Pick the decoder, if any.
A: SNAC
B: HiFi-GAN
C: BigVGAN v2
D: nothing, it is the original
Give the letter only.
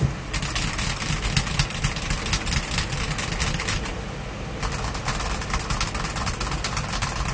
D